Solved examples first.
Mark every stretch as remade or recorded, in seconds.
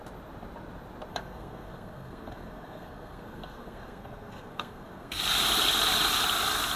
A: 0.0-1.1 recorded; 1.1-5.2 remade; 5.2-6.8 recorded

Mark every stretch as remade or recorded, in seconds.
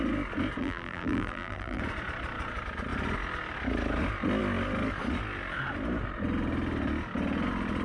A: 0.0-0.6 recorded; 0.6-1.8 remade; 1.8-7.8 recorded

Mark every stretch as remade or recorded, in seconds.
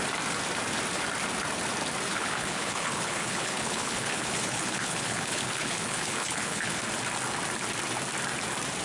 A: 0.0-2.1 recorded; 2.1-6.8 remade; 6.8-8.8 recorded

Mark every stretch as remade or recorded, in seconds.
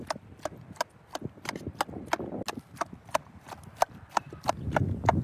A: 0.0-5.2 recorded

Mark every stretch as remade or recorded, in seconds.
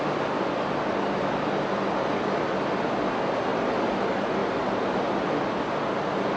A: 0.0-6.4 recorded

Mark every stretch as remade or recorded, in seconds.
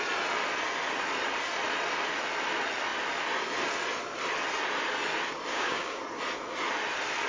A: 0.0-5.5 recorded; 5.5-6.0 remade; 6.0-7.3 recorded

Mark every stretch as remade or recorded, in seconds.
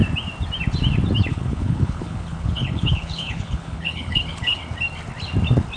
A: 0.0-1.3 recorded; 1.3-4.6 remade; 4.6-5.8 recorded